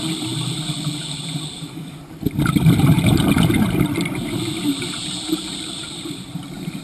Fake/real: fake